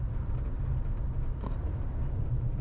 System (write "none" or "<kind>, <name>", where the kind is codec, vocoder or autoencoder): none